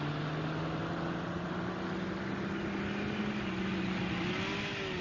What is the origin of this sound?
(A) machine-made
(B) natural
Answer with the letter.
B